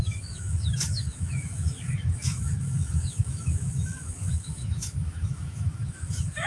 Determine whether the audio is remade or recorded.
remade